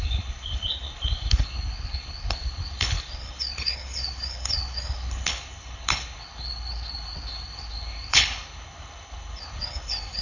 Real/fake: fake